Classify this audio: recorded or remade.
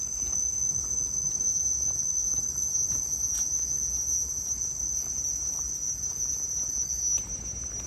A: recorded